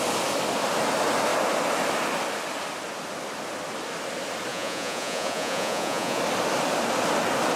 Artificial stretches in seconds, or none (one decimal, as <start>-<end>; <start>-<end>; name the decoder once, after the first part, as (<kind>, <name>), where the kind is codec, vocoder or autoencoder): 4.5-6.2 (vocoder, Vocos)